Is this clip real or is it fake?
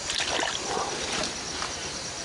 real